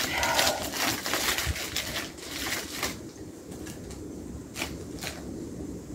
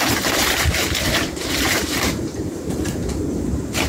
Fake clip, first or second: second